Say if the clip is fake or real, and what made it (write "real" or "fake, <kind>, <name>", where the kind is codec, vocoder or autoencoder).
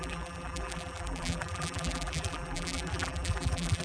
fake, vocoder, BigVGAN v2